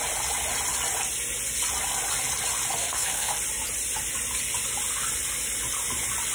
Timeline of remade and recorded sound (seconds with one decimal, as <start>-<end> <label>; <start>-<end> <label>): 0.0-2.8 recorded; 2.8-3.3 remade; 3.3-6.3 recorded